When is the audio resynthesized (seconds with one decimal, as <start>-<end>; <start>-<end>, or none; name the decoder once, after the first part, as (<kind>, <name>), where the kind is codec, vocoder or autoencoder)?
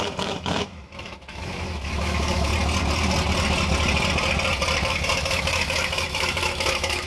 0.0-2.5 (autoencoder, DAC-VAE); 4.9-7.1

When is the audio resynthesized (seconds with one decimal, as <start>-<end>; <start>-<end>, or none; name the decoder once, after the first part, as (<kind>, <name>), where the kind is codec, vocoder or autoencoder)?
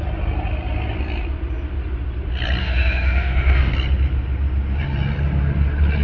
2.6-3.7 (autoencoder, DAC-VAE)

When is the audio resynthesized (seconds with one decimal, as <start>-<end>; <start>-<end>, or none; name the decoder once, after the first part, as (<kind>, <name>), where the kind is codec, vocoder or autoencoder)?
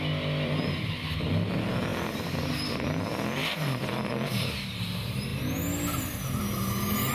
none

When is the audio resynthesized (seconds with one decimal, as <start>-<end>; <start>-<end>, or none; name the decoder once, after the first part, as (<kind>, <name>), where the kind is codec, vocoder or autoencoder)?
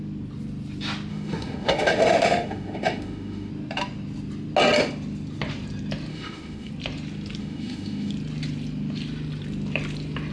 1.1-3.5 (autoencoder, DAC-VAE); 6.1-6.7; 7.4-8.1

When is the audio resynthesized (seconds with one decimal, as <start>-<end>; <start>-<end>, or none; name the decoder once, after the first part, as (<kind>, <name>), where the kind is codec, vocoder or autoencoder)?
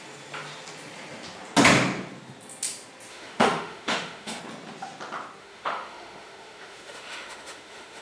3.1-4.4 (autoencoder, DAC-VAE); 5.4-8.0